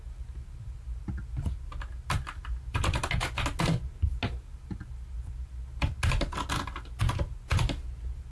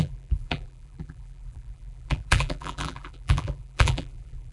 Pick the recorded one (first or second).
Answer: first